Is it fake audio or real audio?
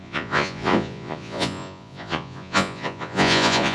fake